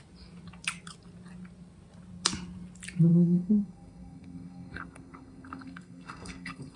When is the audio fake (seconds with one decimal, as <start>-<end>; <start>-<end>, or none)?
3.1-6.8